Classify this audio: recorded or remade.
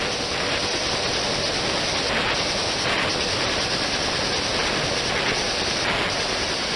recorded